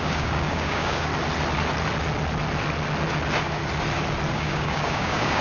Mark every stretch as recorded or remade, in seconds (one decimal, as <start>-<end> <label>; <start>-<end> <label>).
0.0-1.1 remade; 1.1-4.3 recorded; 4.3-5.4 remade